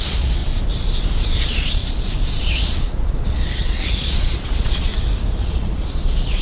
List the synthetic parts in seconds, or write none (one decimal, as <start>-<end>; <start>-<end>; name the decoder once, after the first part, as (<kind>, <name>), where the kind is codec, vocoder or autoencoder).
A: 0.0-0.4 (vocoder, Vocos); 1.2-1.8; 2.4-4.9; 5.4-6.4